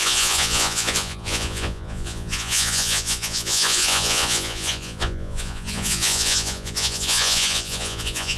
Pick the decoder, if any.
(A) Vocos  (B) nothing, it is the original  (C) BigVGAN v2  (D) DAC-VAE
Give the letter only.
A